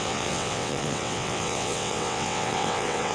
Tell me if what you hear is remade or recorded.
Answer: remade